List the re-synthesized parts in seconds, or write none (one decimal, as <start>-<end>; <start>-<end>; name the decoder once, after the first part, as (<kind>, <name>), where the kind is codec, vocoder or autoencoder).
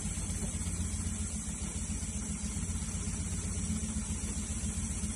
none